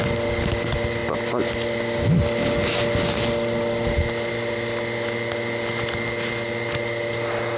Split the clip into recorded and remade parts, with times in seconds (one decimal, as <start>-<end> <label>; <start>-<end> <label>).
0.0-7.6 recorded